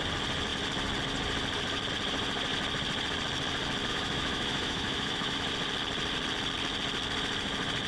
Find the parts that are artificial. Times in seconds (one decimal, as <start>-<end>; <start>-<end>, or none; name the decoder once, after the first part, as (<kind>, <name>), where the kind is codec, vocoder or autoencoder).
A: 3.9-5.4 (autoencoder, DAC-VAE)